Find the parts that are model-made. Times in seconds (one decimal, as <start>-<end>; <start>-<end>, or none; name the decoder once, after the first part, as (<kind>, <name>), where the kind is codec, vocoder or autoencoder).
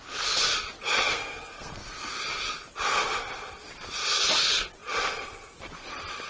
1.1-2.1 (codec, SNAC)